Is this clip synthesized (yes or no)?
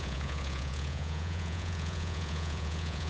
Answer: yes